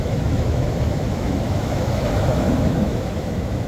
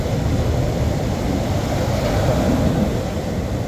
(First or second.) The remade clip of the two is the first